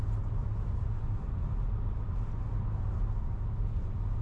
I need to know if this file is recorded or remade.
recorded